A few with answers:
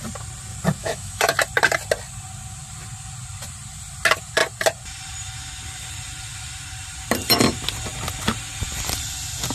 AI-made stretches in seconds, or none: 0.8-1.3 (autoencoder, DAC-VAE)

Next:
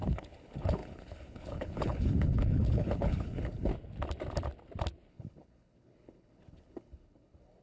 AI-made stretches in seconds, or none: 0.0-3.7 (codec, HILCodec); 5.1-7.6

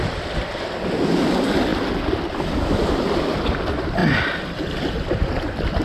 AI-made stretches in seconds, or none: none